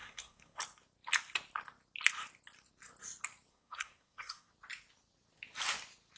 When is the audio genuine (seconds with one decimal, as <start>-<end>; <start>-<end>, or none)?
0.6-3.5; 4.5-6.2